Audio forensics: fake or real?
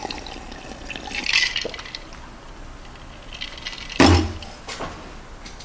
real